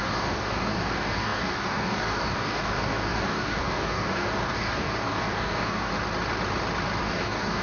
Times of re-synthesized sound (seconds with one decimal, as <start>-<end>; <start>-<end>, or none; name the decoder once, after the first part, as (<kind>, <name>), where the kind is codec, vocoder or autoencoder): 0.0-5.9 (codec, DAC); 7.0-7.6